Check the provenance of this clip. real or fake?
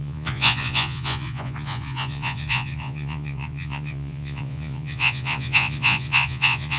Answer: fake